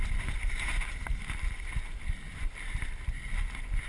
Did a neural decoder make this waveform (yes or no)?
no